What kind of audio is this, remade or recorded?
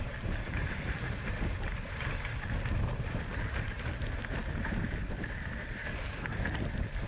recorded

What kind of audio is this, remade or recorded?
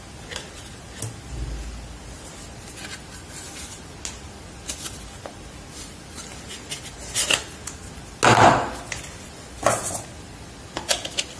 recorded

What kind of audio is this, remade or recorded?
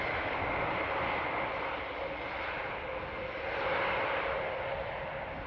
recorded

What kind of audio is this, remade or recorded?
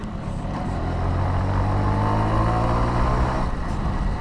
recorded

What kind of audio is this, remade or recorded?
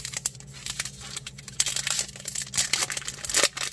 recorded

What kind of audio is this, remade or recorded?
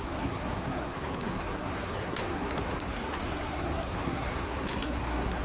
remade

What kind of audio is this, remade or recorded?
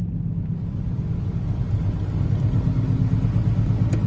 recorded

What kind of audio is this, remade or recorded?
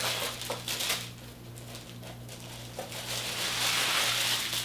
recorded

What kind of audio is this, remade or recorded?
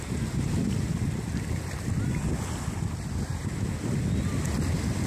recorded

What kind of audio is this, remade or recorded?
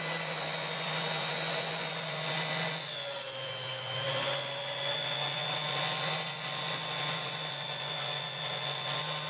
remade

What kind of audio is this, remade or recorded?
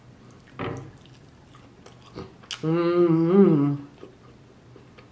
recorded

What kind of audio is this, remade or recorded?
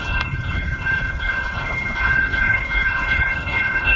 remade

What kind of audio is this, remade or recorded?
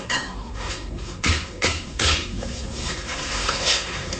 remade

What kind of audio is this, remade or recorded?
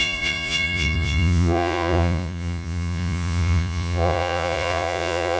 remade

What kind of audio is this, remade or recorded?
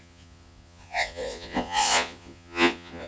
remade